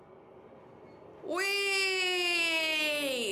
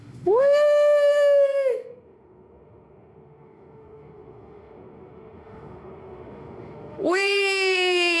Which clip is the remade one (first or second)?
second